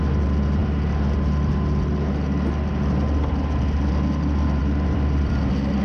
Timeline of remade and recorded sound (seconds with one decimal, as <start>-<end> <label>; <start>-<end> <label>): 0.0-4.6 recorded; 4.6-5.3 remade; 5.3-5.8 recorded